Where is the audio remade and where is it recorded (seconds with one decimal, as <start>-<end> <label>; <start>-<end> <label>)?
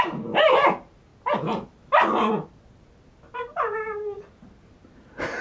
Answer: 0.0-1.1 remade; 1.1-4.3 recorded; 4.3-5.4 remade